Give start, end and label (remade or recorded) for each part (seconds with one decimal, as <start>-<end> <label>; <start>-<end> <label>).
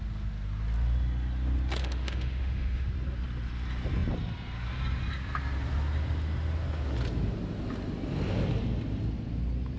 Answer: 0.0-1.8 recorded; 1.8-2.9 remade; 2.9-9.8 recorded